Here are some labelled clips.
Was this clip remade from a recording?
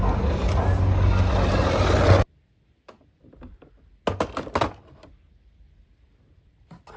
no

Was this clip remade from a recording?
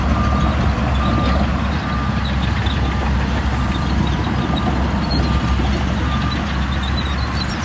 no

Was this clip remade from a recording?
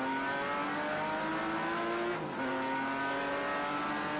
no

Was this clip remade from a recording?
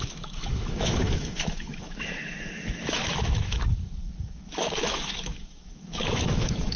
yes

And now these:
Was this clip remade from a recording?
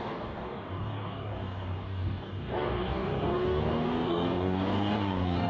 yes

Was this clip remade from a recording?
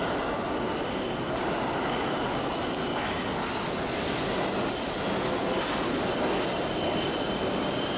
no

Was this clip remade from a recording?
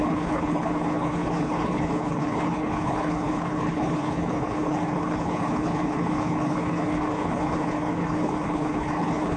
yes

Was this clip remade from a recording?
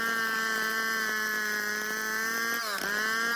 no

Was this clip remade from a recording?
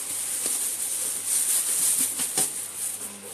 no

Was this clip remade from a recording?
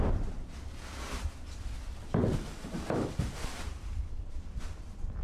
yes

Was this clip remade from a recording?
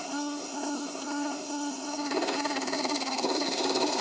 yes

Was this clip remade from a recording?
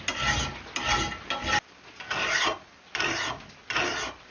no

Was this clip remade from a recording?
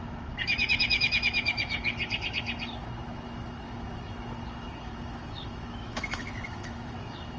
yes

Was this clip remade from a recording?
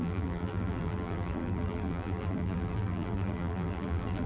yes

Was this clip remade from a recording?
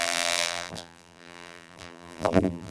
yes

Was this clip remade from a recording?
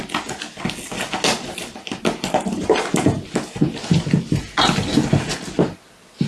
no